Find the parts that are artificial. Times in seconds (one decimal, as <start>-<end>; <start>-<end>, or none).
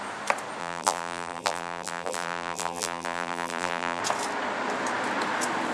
0.6-4.0